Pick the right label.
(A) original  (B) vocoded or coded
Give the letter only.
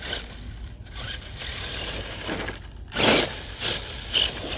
A